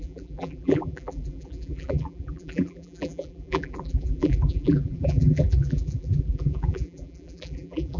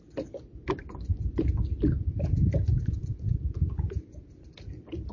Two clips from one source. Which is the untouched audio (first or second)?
second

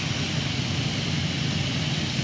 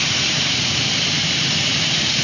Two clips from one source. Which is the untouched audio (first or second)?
first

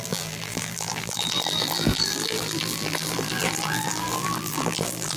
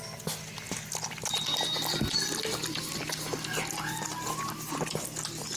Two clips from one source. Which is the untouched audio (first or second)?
second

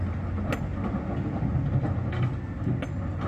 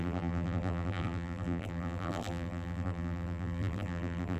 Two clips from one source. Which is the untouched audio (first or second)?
first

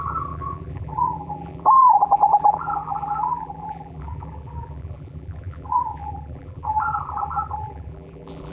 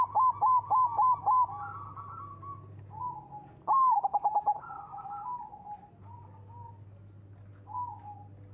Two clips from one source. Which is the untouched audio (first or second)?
second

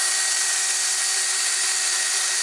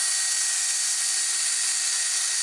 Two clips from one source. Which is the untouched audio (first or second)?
second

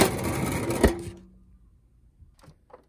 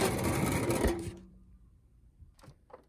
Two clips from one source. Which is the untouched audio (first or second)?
first